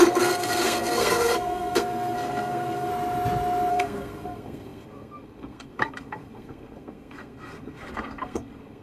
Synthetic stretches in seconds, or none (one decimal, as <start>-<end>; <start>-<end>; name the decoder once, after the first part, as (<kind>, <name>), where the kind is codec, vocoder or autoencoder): 0.0-2.9 (codec, SNAC); 3.7-8.8